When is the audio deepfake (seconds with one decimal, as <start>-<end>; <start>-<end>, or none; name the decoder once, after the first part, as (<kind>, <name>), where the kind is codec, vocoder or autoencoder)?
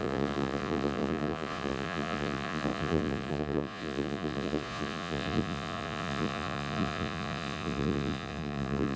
0.0-9.0 (vocoder, Vocos)